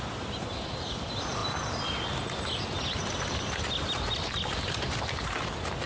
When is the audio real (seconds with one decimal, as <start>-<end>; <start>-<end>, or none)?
0.0-5.9